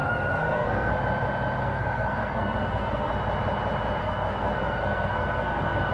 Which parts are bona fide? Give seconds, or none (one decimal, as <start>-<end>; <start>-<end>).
0.9-1.6; 3.1-4.0